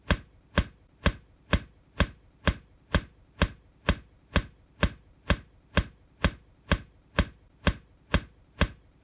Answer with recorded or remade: recorded